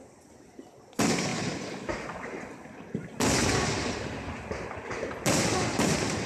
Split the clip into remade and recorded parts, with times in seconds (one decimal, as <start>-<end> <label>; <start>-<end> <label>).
0.0-6.3 recorded